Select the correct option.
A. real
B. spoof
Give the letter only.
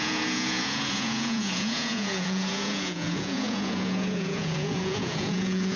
B